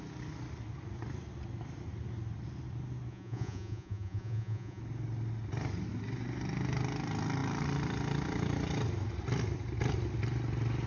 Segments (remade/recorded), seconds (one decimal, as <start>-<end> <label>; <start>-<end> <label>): 0.0-3.1 recorded; 3.1-4.8 remade; 4.8-10.9 recorded

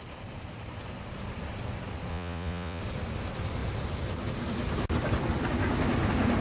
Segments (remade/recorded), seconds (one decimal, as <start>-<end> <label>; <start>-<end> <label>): 0.0-2.1 recorded; 2.1-2.8 remade; 2.8-6.4 recorded